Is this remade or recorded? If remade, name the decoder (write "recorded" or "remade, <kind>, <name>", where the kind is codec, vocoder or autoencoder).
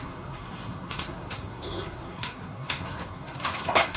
remade, codec, SNAC